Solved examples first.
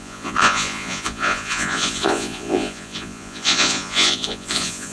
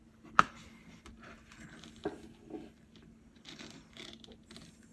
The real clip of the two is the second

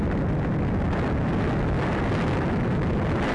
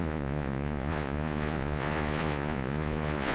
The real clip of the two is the first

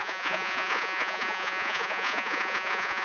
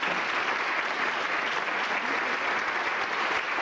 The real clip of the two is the second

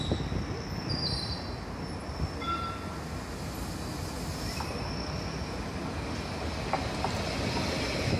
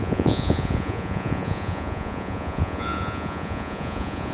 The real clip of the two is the first